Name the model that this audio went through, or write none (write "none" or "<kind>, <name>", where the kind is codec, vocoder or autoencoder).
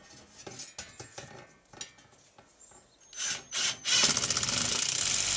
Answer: none